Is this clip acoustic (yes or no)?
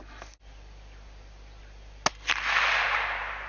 yes